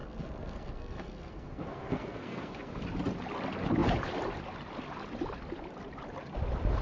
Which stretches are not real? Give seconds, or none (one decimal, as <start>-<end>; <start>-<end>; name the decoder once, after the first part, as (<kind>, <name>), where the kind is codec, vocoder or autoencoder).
0.0-2.7 (codec, SNAC)